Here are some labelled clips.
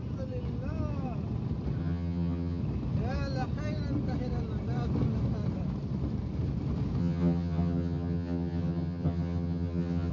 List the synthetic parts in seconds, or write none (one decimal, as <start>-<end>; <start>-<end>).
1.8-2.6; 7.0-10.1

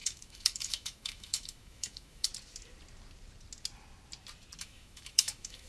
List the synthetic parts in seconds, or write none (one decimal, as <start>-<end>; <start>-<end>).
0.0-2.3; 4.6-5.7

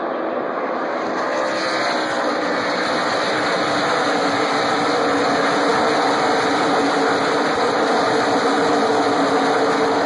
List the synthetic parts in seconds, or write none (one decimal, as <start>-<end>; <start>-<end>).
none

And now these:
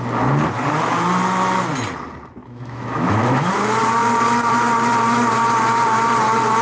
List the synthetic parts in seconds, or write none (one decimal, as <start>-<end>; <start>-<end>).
2.4-3.5